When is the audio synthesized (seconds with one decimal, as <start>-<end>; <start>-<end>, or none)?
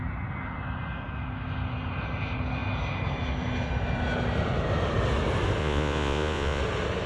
5.6-6.6